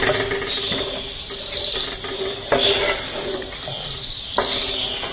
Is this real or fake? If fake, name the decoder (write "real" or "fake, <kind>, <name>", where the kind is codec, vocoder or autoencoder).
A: real